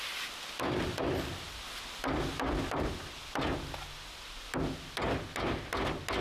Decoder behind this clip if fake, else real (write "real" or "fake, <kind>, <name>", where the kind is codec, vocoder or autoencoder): real